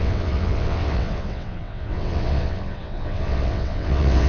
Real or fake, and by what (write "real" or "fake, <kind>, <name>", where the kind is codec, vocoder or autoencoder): fake, vocoder, WaveNeXt